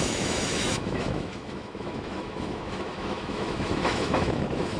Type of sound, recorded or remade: remade